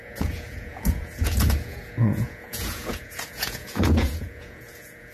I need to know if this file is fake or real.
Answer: fake